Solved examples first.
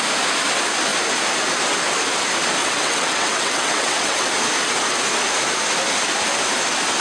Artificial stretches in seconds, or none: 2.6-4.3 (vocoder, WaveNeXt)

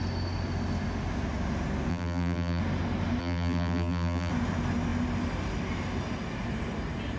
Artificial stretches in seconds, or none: 1.9-2.6 (vocoder, BigVGAN v2); 3.2-4.3

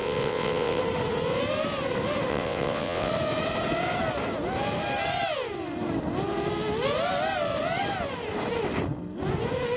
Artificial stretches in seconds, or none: 0.0-0.8 (vocoder, WaveNeXt); 2.3-3.1

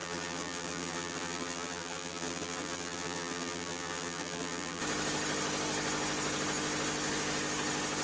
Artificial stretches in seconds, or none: 0.0-4.8 (vocoder, BigVGAN v2)

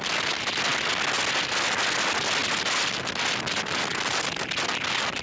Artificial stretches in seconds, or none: none

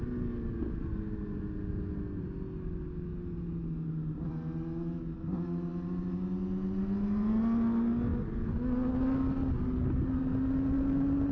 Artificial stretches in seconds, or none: none